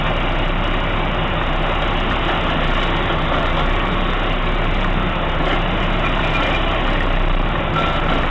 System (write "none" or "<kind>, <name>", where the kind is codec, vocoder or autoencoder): none